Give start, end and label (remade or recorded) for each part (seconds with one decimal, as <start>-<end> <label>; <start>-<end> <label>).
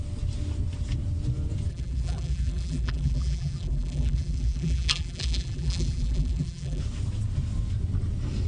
0.0-1.7 recorded; 1.7-6.8 remade; 6.8-8.5 recorded